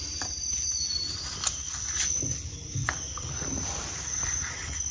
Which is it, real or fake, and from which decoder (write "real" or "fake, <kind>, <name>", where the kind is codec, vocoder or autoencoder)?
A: fake, vocoder, BigVGAN v2